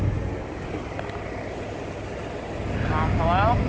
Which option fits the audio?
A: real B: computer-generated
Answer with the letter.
A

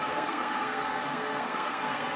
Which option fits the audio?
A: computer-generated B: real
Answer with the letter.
A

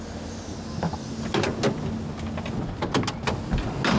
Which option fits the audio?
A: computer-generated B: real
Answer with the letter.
B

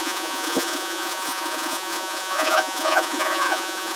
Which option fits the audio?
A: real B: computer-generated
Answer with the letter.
B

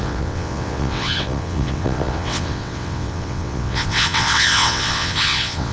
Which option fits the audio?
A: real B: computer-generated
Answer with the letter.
B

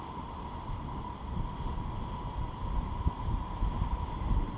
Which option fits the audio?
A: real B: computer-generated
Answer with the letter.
A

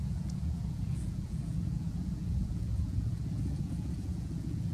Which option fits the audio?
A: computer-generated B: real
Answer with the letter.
A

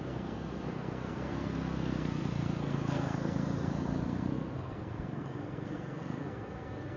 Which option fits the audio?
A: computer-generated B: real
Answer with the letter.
A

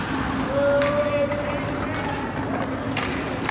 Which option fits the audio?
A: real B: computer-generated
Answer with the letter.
A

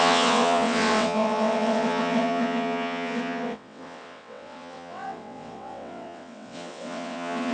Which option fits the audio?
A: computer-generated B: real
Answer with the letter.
A